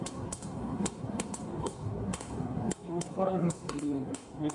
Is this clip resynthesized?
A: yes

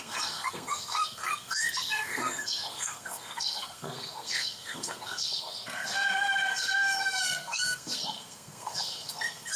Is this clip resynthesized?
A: yes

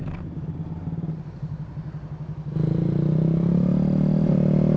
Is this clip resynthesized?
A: no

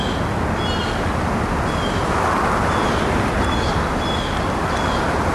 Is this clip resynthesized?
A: no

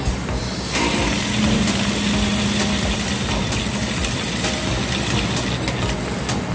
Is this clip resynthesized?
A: no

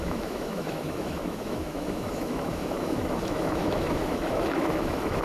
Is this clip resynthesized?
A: yes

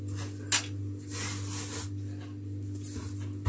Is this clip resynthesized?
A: no